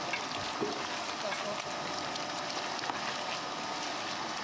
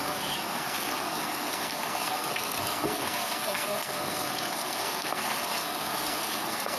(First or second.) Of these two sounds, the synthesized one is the second